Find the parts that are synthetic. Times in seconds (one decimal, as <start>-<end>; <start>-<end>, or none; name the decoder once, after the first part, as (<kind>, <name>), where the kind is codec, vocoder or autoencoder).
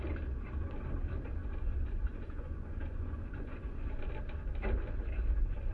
1.4-4.1 (vocoder, Vocos)